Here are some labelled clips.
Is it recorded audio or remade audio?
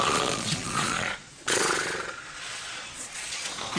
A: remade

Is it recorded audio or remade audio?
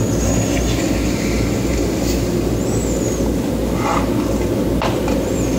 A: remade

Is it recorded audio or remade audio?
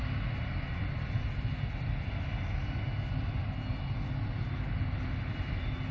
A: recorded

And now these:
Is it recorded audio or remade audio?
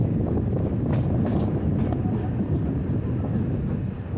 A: recorded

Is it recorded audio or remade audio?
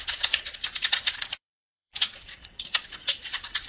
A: remade